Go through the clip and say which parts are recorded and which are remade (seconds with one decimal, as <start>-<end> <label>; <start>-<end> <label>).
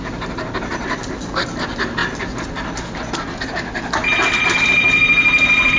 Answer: 0.0-5.8 recorded